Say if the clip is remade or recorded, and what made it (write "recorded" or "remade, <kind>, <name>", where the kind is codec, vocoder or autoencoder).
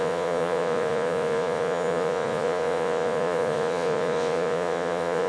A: remade, vocoder, Vocos